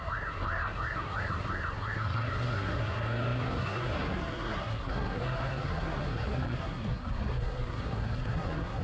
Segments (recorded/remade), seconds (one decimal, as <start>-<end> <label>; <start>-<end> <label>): 0.0-8.8 remade